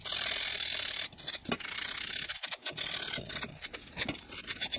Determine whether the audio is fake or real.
real